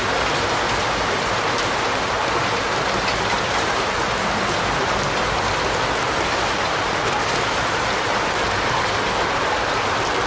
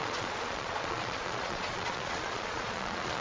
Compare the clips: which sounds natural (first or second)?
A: first